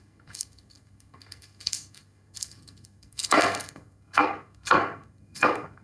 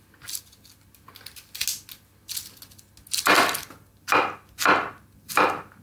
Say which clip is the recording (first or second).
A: second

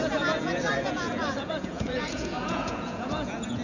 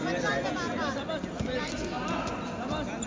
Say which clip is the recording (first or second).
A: second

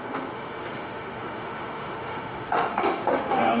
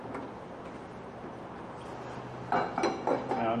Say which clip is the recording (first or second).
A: second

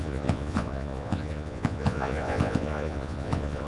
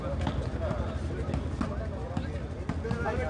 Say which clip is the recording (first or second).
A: second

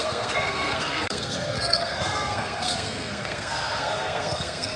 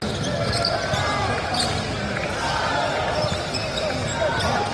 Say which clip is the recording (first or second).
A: second